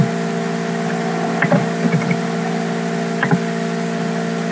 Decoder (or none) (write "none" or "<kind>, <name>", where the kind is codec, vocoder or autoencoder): none